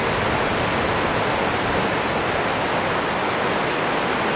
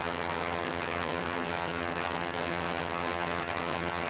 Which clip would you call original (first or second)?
first